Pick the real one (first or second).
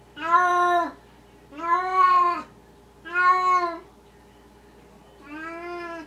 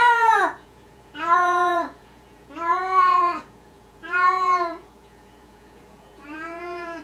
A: first